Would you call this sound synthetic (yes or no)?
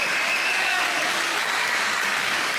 yes